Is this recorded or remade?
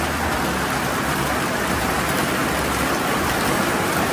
recorded